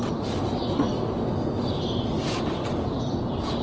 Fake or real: real